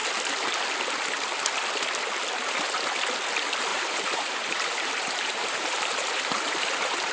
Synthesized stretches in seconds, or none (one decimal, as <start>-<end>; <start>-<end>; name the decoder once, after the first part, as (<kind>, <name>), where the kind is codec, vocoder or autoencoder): 3.7-7.1 (vocoder, BigVGAN v2)